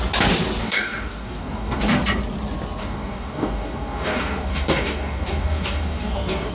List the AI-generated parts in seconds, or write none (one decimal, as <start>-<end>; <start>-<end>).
0.6-1.9; 2.8-6.5

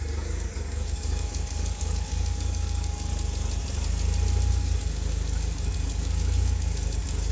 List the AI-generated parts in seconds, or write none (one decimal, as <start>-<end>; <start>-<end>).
0.0-3.1; 4.5-7.3

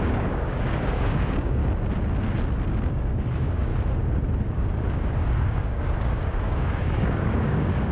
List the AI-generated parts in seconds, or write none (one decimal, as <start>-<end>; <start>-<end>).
0.0-1.6; 2.9-3.7; 4.5-7.9

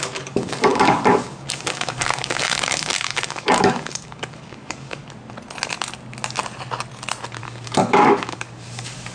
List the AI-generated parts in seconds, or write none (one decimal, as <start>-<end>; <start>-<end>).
0.0-5.0; 7.4-9.1